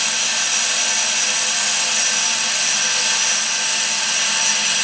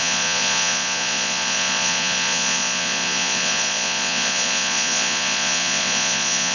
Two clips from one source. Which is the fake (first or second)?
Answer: second